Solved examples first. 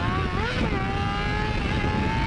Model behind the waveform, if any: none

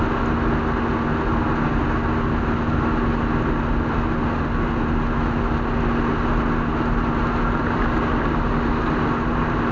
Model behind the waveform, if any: none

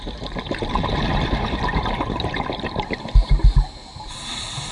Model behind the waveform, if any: vocoder, BigVGAN v2